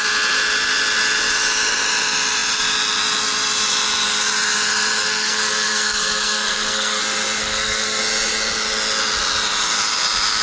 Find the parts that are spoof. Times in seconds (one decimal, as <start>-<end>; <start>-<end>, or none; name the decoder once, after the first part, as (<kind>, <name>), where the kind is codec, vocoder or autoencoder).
5.0-7.0 (codec, SNAC); 7.4-8.0